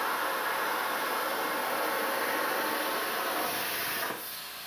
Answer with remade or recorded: recorded